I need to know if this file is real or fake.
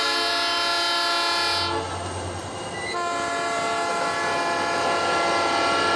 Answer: real